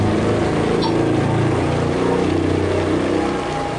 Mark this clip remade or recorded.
recorded